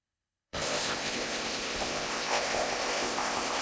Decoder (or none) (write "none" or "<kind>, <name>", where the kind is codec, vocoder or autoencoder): codec, ZipCodec